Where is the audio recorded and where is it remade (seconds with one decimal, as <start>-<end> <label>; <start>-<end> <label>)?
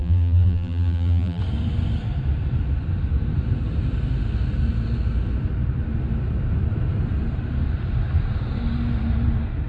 0.0-1.4 remade; 1.4-9.7 recorded